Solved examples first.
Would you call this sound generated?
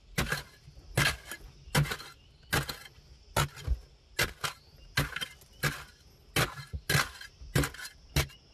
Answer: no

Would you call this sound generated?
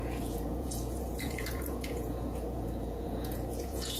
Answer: yes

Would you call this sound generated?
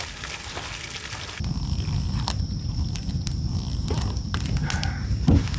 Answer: no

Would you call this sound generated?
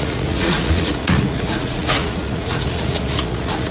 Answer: yes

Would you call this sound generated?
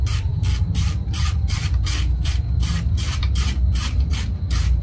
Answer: yes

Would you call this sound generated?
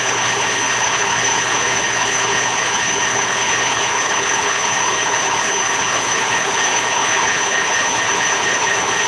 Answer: yes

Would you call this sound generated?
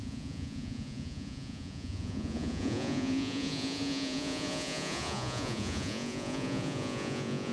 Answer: yes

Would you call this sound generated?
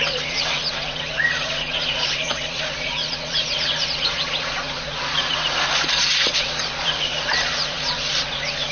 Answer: yes